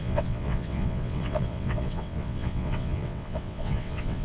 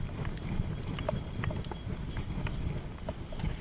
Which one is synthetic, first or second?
first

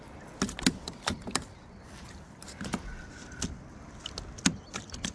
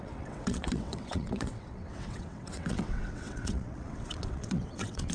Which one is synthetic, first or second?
second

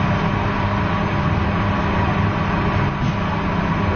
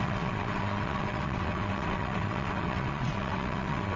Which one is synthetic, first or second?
second